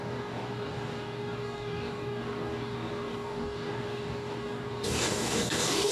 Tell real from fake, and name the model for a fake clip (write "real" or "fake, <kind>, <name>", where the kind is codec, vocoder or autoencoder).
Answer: fake, codec, DAC